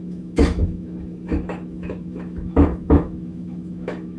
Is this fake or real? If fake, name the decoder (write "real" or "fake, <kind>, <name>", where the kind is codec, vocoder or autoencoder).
fake, autoencoder, DAC-VAE